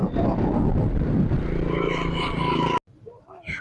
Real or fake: real